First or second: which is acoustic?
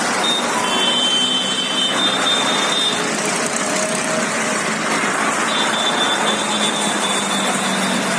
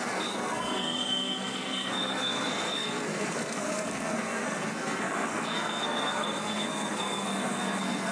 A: first